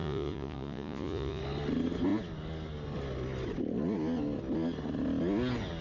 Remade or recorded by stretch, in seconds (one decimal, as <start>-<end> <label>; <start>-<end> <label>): 0.0-1.4 remade; 1.4-5.8 recorded